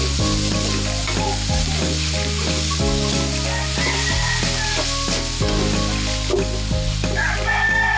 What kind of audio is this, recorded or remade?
recorded